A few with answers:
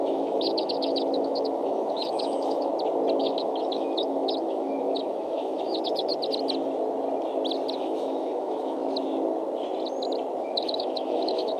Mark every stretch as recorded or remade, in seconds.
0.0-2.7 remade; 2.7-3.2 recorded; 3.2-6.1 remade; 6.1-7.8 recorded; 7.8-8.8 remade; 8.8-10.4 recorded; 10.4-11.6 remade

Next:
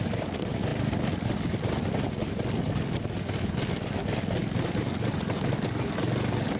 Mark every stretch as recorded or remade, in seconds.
0.0-6.6 remade

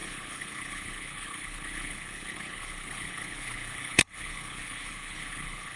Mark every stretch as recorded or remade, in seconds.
0.0-5.8 remade

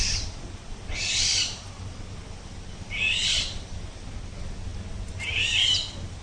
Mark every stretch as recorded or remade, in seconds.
0.0-6.2 recorded

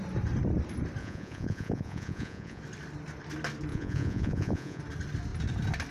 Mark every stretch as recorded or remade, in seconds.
0.0-1.0 recorded; 1.0-2.6 remade; 2.6-3.7 recorded; 3.7-4.8 remade; 4.8-5.9 recorded

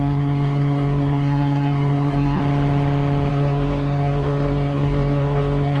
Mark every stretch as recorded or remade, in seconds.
0.0-2.4 remade; 2.4-3.3 recorded; 3.3-5.8 remade

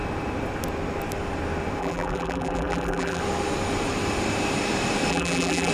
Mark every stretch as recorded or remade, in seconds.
0.0-1.8 recorded; 1.8-3.2 remade; 3.2-5.1 recorded; 5.1-5.7 remade